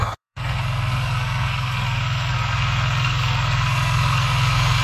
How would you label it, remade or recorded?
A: remade